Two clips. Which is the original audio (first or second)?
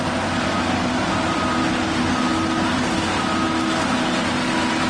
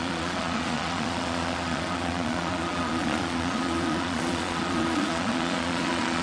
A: first